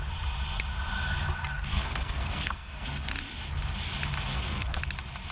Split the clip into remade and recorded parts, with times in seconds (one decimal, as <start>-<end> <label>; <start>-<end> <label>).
0.0-1.7 recorded; 1.7-3.1 remade; 3.1-4.3 recorded; 4.3-4.8 remade; 4.8-5.3 recorded